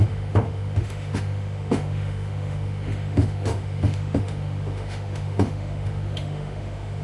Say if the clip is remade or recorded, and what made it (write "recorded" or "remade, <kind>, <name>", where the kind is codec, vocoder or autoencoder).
remade, autoencoder, DAC-VAE